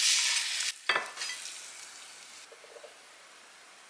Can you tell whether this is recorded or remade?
recorded